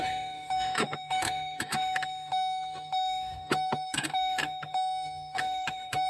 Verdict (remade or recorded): remade